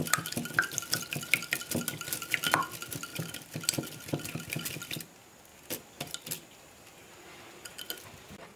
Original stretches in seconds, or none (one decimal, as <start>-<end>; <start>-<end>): 0.0-3.1; 4.0-8.6